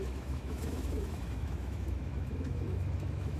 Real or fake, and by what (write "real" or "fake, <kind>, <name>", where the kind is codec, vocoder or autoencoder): fake, autoencoder, DAC-VAE